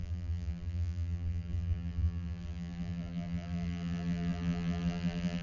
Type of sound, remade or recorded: remade